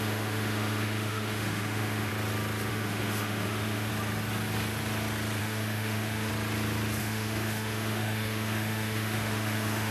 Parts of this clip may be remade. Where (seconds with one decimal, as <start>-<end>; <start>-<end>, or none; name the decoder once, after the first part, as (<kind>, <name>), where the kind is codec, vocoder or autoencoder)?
0.0-2.1 (autoencoder, DAC-VAE); 2.7-3.9; 5.4-6.3; 7.0-9.9